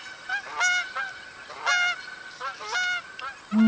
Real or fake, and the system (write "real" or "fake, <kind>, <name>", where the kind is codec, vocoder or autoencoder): real